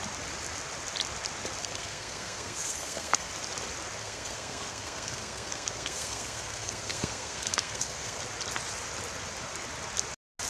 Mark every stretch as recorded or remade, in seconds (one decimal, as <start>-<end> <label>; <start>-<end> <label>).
0.0-1.6 recorded; 1.6-3.3 remade; 3.3-4.0 recorded; 4.0-8.2 remade; 8.2-10.5 recorded